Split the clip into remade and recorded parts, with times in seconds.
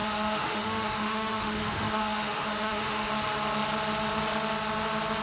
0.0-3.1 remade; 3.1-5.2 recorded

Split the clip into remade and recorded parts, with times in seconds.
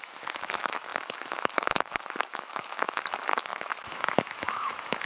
0.0-5.1 remade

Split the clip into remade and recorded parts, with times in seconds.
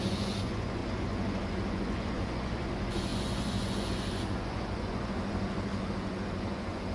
0.0-6.9 remade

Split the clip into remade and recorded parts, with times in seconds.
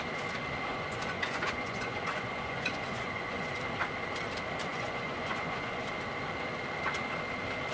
0.0-0.7 recorded; 0.7-3.6 remade; 3.6-4.7 recorded; 4.7-5.9 remade; 5.9-7.7 recorded